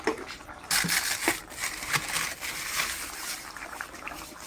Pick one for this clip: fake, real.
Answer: fake